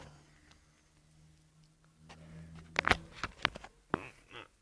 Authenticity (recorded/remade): recorded